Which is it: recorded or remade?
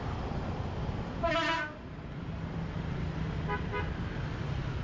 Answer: recorded